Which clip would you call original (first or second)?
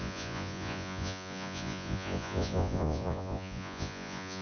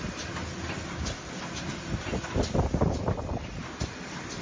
second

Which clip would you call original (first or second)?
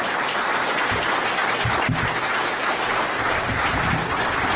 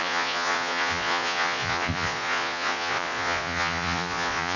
first